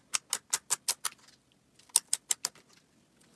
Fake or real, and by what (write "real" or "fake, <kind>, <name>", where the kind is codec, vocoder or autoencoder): real